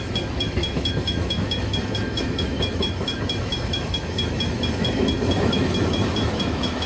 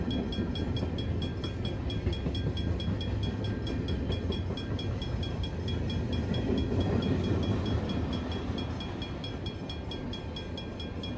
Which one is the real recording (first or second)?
second